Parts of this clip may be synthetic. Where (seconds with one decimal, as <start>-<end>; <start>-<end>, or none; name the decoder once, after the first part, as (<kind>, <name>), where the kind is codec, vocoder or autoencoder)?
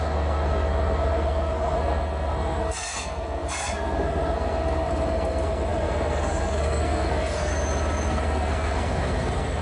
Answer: 0.0-7.5 (codec, SNAC); 8.1-9.6